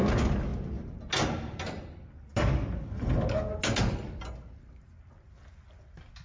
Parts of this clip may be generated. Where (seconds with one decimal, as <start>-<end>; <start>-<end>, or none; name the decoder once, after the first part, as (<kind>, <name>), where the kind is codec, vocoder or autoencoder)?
none